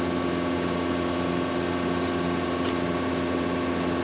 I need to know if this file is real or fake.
real